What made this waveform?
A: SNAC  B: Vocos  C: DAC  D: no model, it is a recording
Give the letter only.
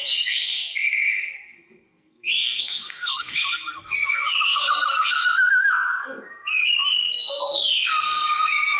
A